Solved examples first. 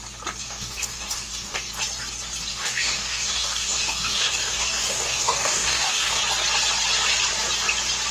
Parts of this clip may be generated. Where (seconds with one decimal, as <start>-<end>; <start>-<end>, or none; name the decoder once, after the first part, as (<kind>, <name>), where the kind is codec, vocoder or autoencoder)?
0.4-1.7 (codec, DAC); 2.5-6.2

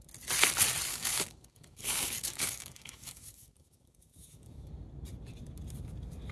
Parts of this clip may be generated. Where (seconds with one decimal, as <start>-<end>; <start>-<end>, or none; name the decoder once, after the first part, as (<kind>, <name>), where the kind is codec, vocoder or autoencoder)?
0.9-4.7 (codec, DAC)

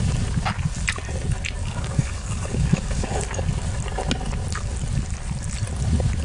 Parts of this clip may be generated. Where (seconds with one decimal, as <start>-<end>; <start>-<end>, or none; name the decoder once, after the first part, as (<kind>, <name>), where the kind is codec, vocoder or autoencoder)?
1.6-3.2 (codec, DAC)